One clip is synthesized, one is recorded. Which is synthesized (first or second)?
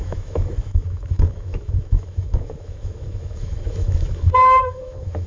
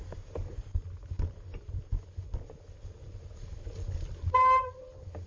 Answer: first